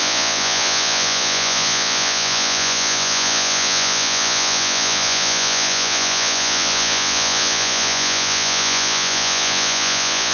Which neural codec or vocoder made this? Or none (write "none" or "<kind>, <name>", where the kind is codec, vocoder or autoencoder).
vocoder, Vocos